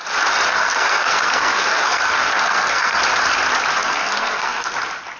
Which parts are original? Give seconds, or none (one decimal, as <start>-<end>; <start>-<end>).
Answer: 0.0-0.5; 3.0-3.8; 4.7-5.2